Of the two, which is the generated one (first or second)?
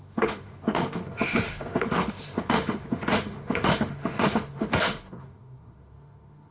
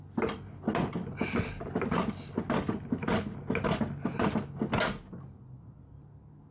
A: first